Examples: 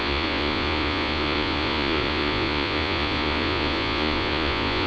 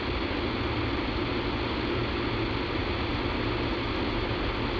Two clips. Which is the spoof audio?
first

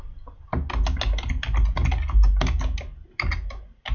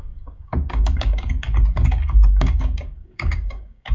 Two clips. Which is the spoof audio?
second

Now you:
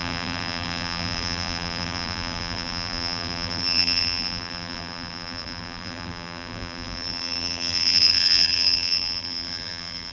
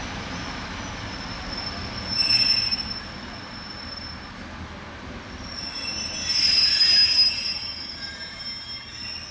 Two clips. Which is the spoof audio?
first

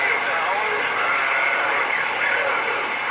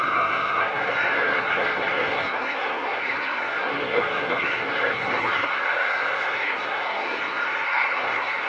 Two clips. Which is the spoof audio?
second